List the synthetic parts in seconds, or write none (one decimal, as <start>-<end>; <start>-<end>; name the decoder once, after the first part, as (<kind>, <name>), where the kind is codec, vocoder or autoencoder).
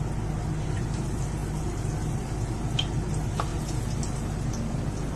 none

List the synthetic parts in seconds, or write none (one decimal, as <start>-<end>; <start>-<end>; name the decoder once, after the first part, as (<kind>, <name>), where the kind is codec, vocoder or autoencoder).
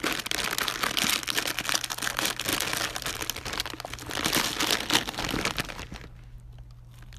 none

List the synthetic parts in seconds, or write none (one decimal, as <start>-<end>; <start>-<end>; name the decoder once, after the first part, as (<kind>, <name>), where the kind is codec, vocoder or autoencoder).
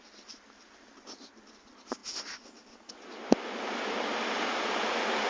none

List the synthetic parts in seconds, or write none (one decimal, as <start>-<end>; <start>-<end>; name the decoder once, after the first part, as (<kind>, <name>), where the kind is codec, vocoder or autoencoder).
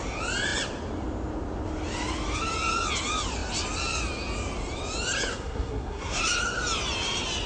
5.3-6.2 (codec, SNAC)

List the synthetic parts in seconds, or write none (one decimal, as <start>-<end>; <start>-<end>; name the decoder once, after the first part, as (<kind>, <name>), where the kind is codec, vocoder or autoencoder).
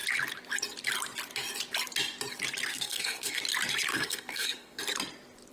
2.7-3.4 (codec, SNAC); 3.9-4.8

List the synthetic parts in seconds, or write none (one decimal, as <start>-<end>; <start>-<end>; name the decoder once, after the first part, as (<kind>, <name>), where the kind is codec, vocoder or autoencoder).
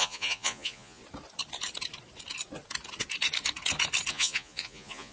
0.0-1.0 (vocoder, Vocos); 4.1-5.1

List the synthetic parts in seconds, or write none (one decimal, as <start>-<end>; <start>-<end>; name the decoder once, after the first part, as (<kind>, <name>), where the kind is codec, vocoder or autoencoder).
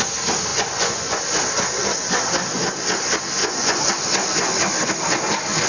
0.5-1.2 (vocoder, Vocos); 3.4-3.9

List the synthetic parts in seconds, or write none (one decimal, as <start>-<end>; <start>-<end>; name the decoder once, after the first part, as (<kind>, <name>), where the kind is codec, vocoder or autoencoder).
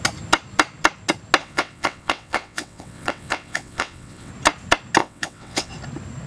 1.4-4.3 (vocoder, WaveNeXt); 5.0-5.7